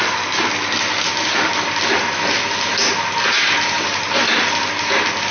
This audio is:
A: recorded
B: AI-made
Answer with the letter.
A